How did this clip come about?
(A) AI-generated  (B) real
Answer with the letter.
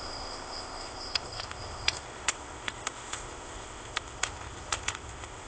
A